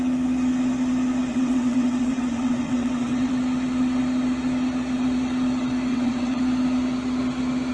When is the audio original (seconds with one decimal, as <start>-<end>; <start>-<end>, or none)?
0.0-1.3; 3.3-5.9; 6.4-7.7